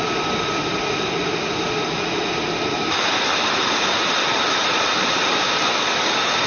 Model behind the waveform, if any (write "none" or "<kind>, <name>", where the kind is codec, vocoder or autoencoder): none